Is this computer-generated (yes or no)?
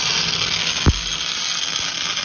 no